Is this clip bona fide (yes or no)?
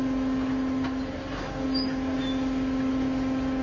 yes